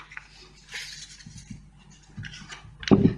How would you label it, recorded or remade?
recorded